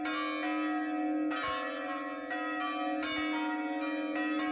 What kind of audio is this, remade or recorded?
recorded